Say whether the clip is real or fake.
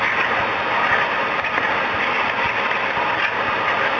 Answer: real